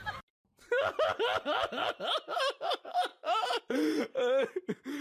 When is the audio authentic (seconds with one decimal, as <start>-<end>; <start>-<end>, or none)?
0.0-3.1